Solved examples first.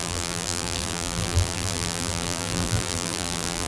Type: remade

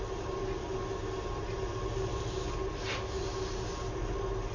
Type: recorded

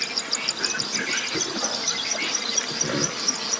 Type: recorded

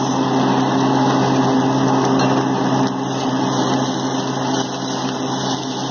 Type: recorded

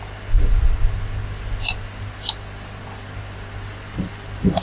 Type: recorded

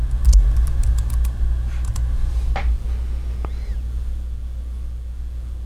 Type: recorded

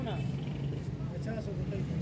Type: recorded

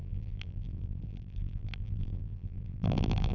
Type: remade